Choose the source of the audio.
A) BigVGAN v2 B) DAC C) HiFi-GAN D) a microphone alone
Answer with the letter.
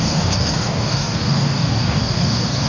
B